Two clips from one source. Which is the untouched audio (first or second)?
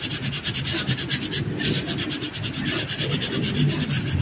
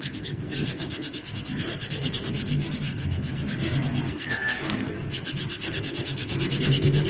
first